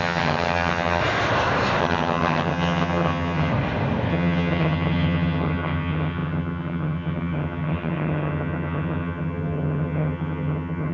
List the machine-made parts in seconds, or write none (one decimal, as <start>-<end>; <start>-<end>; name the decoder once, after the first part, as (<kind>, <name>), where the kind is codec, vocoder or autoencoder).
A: 0.0-1.0 (vocoder, HiFi-GAN); 1.8-3.5; 4.1-10.9